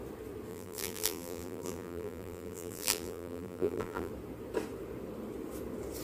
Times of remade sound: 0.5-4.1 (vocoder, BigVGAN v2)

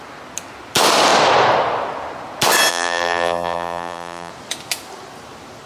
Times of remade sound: 2.7-4.3 (vocoder, BigVGAN v2)

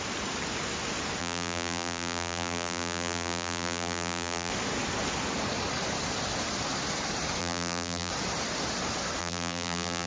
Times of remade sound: 1.2-4.5 (vocoder, BigVGAN v2); 7.4-8.1; 9.2-10.1

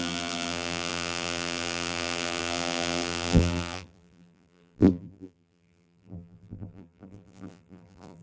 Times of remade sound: 0.0-8.2 (vocoder, BigVGAN v2)

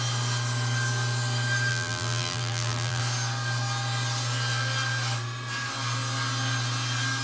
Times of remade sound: 1.7-3.0 (vocoder, BigVGAN v2)

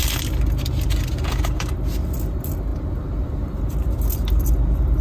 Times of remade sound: none